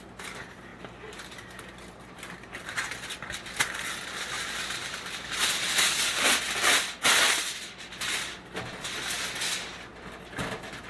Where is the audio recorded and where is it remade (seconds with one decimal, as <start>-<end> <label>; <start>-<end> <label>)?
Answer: 0.0-10.9 recorded